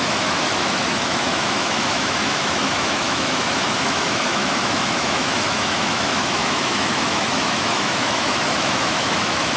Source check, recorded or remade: remade